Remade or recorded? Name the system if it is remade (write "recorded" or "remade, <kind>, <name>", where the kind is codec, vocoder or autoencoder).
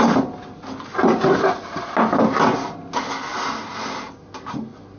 recorded